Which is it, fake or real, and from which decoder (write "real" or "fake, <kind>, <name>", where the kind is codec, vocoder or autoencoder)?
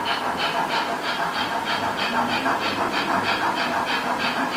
real